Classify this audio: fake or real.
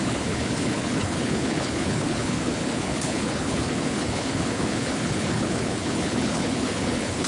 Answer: fake